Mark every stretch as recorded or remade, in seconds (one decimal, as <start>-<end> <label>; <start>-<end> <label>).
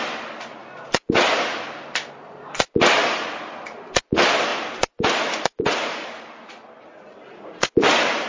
0.0-8.3 recorded